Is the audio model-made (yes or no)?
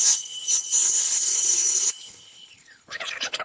yes